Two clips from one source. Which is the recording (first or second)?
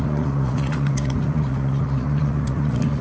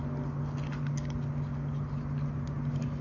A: second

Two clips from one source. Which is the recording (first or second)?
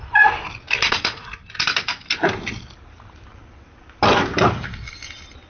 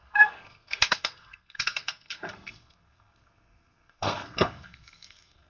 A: first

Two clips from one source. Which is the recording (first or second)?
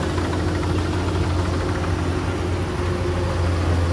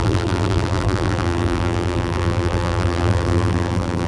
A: first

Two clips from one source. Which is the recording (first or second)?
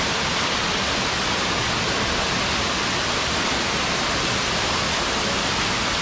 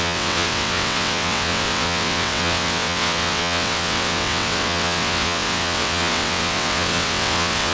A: first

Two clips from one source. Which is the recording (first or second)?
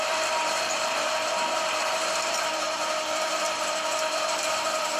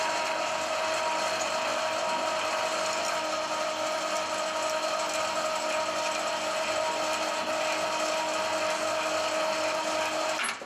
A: second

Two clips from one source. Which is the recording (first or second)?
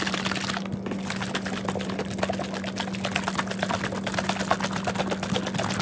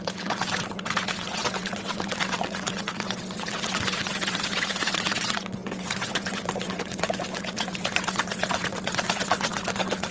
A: first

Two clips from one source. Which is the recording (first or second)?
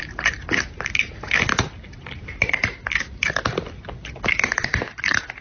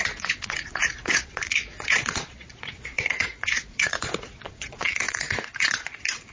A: first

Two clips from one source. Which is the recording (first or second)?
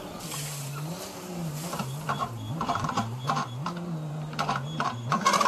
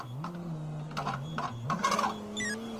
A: second